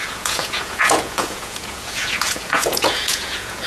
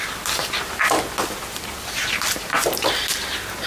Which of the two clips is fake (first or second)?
first